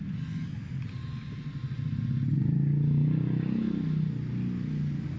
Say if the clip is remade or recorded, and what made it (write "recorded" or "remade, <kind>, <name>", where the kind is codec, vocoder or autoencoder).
recorded